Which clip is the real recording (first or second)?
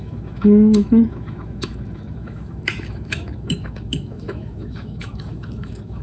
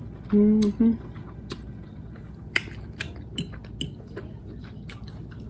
second